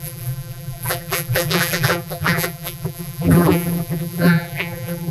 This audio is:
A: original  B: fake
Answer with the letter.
B